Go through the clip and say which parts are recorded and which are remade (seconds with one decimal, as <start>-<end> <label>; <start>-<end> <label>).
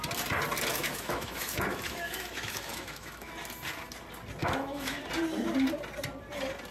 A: 0.0-0.7 recorded; 0.7-3.3 remade; 3.3-4.4 recorded; 4.4-5.0 remade; 5.0-6.7 recorded